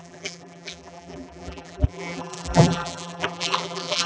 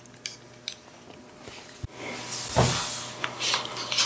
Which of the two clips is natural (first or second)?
second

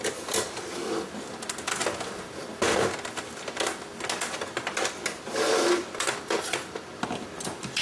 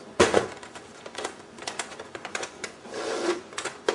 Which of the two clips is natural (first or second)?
first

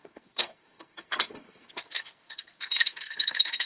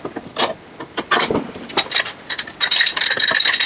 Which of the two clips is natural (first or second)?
second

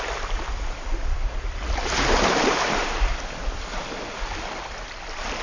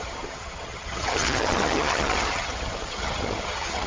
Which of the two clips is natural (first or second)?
first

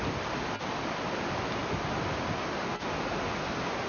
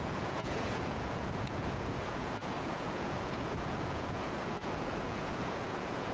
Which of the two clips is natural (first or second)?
first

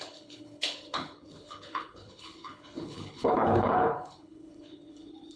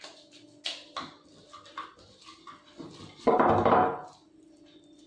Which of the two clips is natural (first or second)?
second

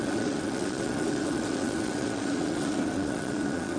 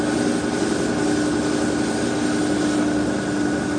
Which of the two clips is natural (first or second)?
second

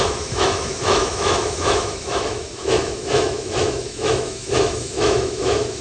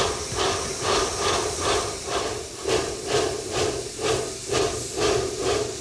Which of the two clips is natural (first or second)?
second